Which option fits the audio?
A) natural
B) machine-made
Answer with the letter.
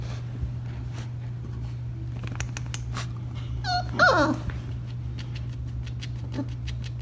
A